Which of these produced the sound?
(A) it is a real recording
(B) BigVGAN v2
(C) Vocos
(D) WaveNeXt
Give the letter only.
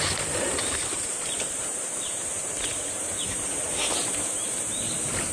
B